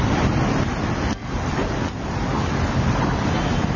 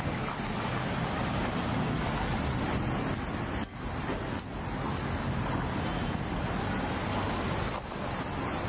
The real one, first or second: second